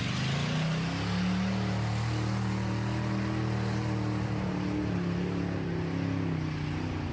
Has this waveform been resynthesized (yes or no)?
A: no